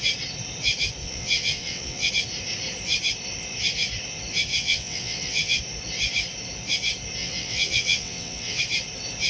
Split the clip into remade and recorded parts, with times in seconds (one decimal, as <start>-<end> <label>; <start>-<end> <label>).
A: 0.0-1.0 recorded; 1.0-2.1 remade; 2.1-4.5 recorded; 4.5-5.6 remade; 5.6-7.2 recorded; 7.2-8.6 remade; 8.6-9.3 recorded